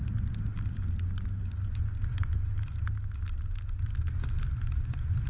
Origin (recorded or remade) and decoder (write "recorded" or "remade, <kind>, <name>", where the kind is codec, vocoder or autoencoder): recorded